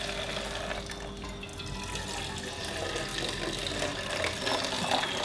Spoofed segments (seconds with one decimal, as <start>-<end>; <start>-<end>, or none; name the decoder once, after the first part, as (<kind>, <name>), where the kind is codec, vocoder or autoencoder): none